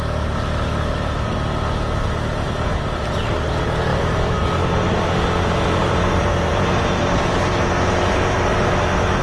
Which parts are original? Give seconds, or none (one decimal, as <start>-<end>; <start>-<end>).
0.0-3.9; 5.2-5.8; 8.7-9.2